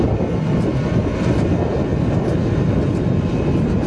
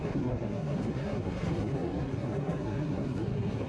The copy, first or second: second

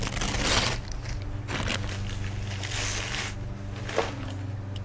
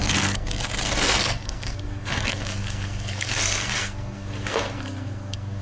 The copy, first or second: second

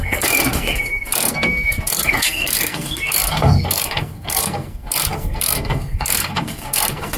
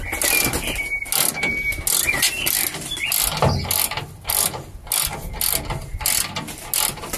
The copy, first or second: first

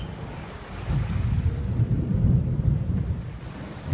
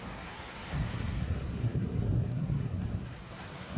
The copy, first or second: second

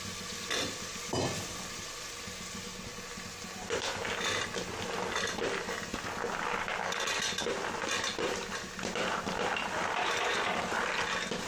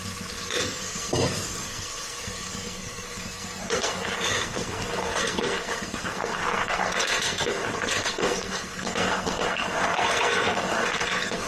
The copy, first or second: second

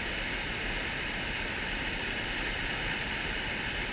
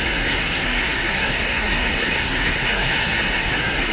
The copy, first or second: second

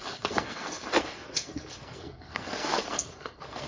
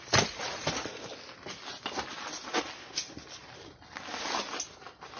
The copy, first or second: first